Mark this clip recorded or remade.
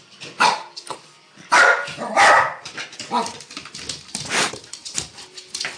remade